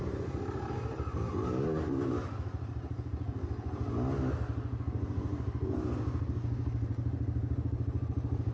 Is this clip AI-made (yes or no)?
no